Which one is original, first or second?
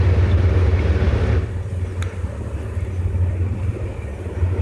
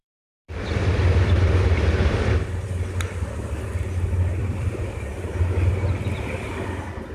first